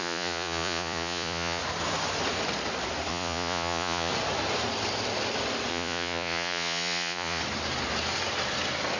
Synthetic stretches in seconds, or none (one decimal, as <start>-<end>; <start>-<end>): 0.0-1.6; 3.1-4.1; 5.7-7.4